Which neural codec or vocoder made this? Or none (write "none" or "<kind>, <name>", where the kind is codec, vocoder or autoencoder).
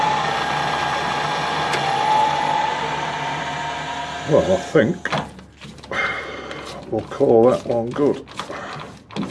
none